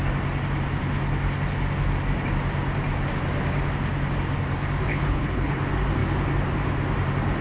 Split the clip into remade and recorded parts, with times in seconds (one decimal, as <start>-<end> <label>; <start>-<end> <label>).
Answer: 0.0-4.9 recorded; 4.9-5.6 remade; 5.6-7.4 recorded